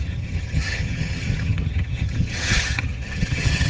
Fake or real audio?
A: fake